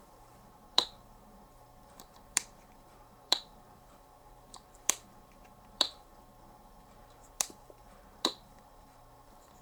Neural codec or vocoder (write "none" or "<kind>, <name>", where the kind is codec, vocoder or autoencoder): vocoder, BigVGAN v2